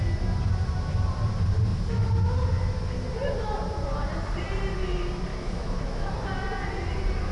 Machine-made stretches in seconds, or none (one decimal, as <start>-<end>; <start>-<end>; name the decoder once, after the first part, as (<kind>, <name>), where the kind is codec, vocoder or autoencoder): 5.3-6.1 (autoencoder, DAC-VAE)